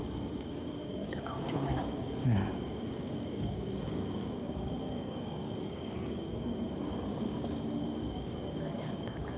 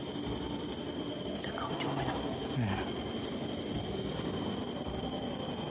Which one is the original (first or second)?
second